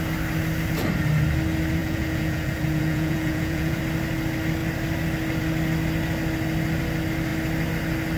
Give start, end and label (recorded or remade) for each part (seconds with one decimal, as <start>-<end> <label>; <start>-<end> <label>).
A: 0.0-1.8 recorded; 1.8-3.8 remade; 3.8-8.2 recorded